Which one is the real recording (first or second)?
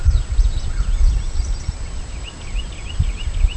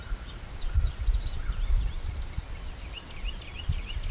first